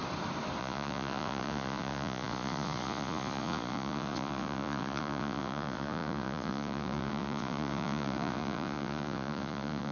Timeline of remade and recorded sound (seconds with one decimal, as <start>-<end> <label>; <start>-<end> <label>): 0.0-0.6 recorded; 0.6-9.9 remade